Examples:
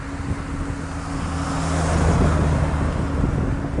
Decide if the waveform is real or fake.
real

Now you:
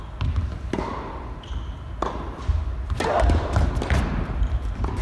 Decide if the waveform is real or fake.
real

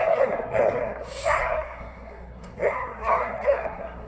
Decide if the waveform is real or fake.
fake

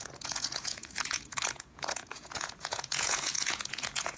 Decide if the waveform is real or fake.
fake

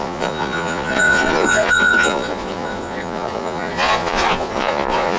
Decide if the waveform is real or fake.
fake